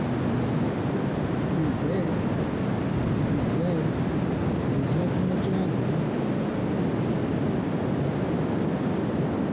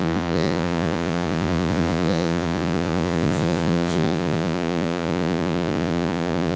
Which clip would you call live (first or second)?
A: first